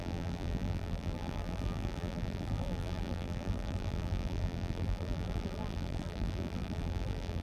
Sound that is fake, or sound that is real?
fake